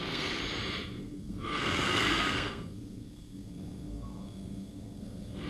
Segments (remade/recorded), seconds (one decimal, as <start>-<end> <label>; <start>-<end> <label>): 0.0-0.4 remade; 0.4-0.9 recorded; 0.9-5.5 remade